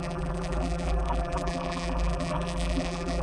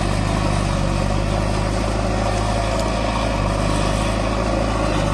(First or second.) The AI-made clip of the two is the first